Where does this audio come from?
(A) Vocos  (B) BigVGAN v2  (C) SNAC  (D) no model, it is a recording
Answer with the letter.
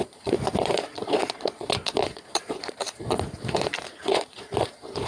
A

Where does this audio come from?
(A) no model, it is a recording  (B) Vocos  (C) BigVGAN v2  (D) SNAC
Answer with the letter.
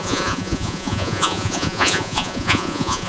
B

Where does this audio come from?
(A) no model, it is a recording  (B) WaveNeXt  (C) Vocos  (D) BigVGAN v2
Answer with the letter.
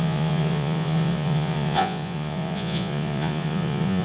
C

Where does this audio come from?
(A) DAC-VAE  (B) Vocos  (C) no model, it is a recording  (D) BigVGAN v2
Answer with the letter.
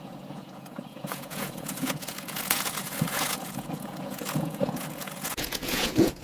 B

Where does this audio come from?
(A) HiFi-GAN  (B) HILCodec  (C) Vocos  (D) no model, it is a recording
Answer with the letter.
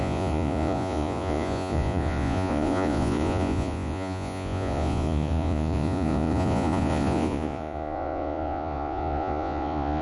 C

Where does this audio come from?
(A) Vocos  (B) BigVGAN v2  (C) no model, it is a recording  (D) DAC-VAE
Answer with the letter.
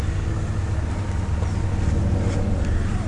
C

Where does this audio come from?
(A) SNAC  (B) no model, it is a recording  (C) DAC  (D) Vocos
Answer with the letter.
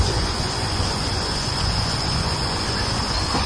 D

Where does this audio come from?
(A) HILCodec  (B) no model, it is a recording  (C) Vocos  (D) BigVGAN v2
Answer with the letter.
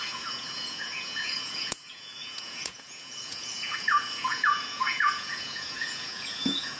C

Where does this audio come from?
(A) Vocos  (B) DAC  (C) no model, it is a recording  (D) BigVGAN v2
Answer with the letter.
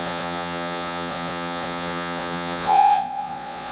A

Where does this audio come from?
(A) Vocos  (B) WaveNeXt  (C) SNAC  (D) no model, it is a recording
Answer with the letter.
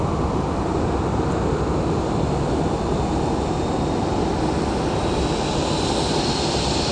D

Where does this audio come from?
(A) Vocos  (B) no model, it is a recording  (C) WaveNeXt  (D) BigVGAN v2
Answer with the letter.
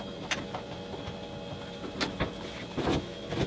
B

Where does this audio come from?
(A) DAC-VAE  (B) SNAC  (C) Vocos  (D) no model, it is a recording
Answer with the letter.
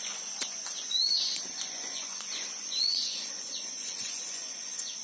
C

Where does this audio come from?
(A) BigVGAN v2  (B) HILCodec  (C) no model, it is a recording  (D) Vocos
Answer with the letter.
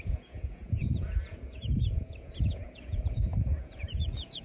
D